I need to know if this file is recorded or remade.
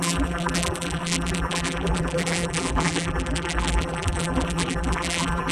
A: remade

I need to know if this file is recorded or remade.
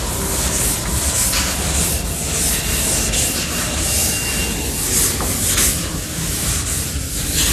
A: recorded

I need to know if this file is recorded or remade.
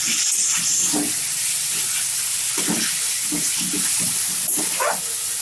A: recorded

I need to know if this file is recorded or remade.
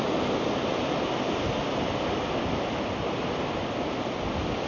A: recorded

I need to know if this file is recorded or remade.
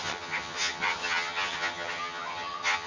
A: remade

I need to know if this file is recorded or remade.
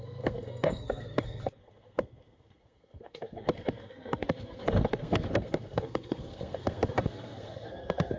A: remade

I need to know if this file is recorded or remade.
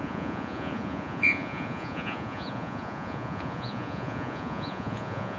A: remade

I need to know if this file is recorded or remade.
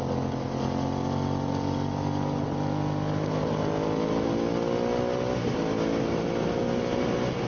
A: recorded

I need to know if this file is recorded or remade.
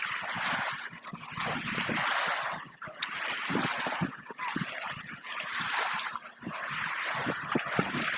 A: recorded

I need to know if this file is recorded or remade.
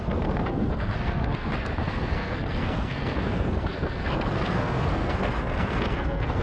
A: remade